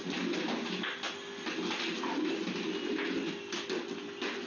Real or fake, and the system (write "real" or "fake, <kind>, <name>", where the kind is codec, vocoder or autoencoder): real